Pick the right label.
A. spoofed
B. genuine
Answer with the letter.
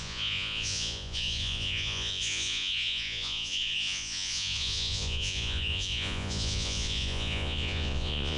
A